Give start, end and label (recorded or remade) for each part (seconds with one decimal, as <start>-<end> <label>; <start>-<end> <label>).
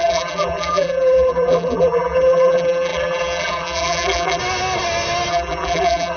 0.0-4.4 remade; 4.4-5.3 recorded; 5.3-6.2 remade